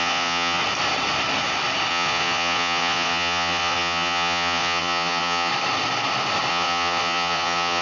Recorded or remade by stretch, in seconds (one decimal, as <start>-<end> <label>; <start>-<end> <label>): 0.0-0.6 remade; 0.6-1.9 recorded; 1.9-5.5 remade; 5.5-6.5 recorded; 6.5-7.8 remade